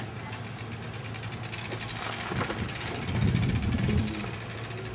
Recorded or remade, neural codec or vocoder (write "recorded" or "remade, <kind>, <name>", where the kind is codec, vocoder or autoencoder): recorded